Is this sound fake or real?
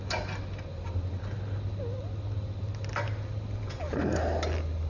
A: real